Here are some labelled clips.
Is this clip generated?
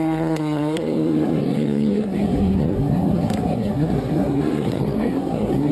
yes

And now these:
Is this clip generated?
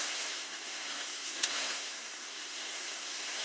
yes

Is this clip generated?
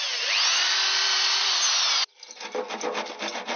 no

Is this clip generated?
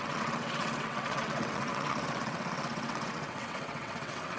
yes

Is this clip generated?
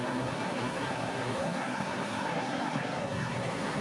yes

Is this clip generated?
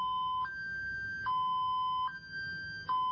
no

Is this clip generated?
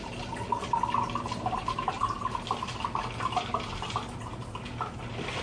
no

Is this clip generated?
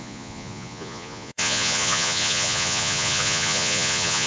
yes